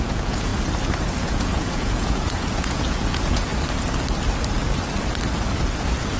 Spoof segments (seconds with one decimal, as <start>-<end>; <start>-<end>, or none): 0.0-0.5; 1.2-3.5; 5.8-6.2

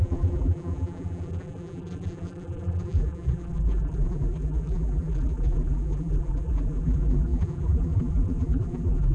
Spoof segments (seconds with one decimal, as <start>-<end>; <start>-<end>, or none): 0.0-9.1

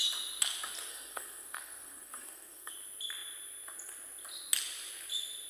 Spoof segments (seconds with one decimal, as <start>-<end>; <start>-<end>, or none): 0.9-2.7

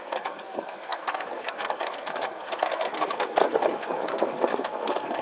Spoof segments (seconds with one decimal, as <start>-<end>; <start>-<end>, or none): 0.0-5.2

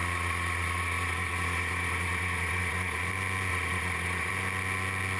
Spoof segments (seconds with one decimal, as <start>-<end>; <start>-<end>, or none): 0.0-3.1; 3.5-4.3

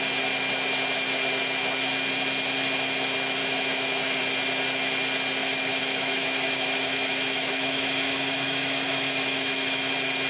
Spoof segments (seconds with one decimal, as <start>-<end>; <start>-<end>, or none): 3.4-4.2; 5.4-9.9